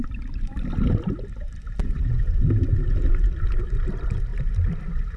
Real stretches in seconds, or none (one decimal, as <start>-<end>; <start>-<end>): 0.0-1.8; 2.4-5.2